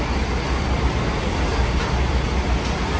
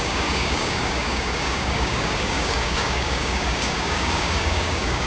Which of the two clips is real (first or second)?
first